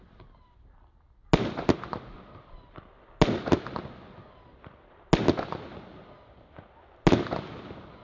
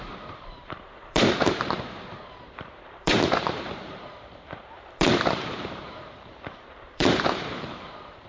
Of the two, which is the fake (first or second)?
second